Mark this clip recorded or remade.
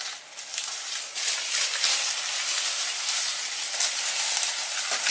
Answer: recorded